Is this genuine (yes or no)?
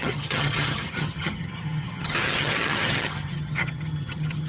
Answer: no